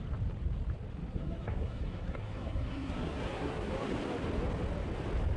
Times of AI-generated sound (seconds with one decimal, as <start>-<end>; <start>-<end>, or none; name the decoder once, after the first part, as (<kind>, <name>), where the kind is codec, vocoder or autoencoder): 1.1-3.7 (codec, SNAC)